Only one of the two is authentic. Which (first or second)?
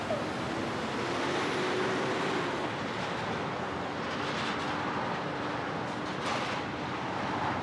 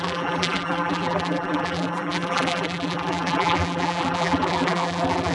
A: first